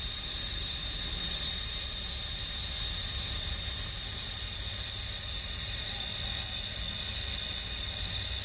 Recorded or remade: recorded